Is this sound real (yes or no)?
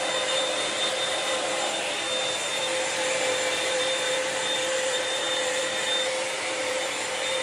no